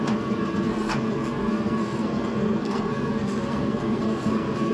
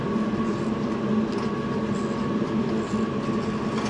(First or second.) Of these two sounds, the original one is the second